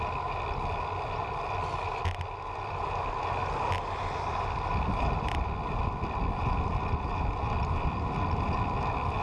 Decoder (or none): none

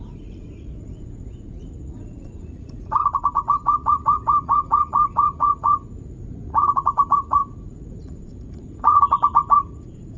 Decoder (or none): vocoder, Vocos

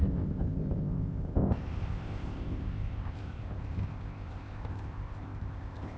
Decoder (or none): codec, ZipCodec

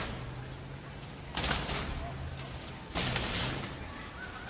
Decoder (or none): none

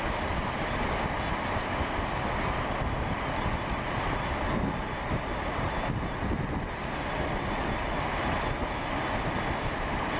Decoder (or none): none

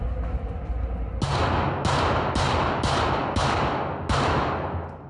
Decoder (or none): none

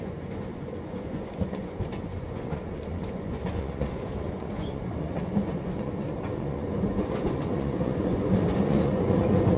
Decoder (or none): vocoder, Vocos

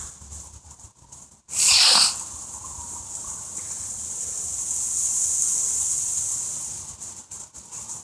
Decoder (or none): none